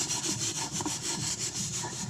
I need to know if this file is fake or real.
fake